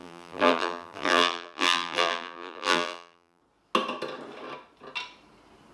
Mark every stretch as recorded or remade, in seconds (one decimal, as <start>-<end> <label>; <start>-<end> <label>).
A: 0.0-3.4 remade; 3.4-5.7 recorded